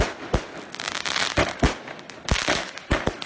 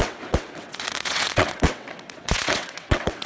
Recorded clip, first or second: first